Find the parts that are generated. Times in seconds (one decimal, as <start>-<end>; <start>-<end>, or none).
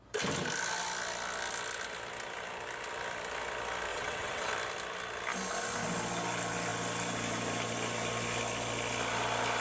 3.9-4.5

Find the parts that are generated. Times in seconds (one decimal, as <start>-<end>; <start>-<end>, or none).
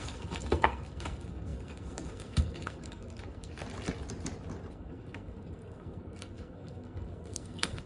0.0-3.6; 4.7-7.9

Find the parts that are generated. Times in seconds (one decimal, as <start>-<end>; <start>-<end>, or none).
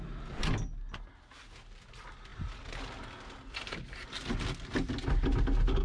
none